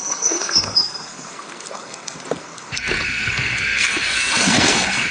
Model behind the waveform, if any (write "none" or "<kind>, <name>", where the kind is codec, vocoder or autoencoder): codec, SNAC